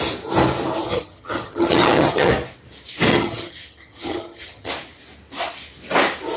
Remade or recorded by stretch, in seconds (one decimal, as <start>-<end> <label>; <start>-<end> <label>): 0.0-0.8 recorded; 0.8-2.3 remade; 2.3-3.1 recorded; 3.1-4.7 remade; 4.7-6.4 recorded

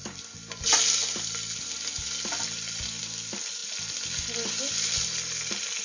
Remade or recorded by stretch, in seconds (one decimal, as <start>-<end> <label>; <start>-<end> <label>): 0.0-5.8 recorded

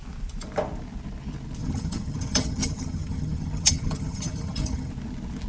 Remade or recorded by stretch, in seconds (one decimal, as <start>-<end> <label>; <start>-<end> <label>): 0.0-1.6 recorded; 1.6-4.9 remade; 4.9-5.5 recorded

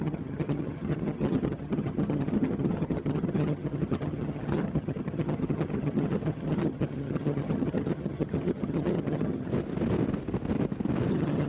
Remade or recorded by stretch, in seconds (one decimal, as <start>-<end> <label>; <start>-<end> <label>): 0.0-9.5 remade; 9.5-11.1 recorded; 11.1-11.5 remade

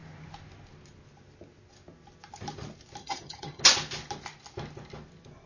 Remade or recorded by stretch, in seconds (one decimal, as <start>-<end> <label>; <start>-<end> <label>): 0.0-3.0 recorded; 3.0-3.6 remade; 3.6-5.5 recorded

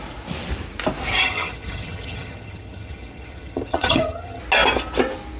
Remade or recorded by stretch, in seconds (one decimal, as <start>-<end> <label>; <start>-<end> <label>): 0.0-1.2 recorded; 1.2-4.4 remade; 4.4-5.4 recorded

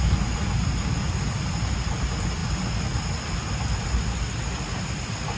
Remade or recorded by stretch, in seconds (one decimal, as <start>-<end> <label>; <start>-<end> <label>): 0.0-5.4 recorded